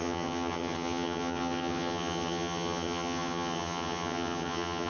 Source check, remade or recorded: remade